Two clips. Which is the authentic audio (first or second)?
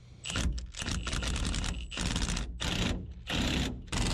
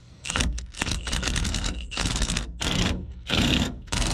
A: first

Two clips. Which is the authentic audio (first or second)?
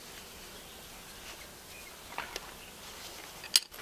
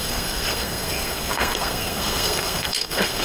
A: first